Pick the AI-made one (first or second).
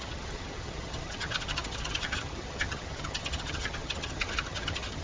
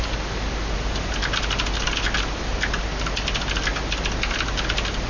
first